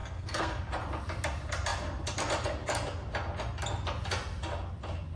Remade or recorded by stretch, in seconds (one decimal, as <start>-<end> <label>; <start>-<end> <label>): 0.0-0.6 remade; 0.6-5.2 recorded